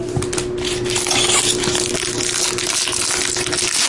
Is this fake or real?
real